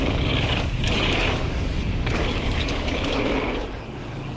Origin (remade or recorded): remade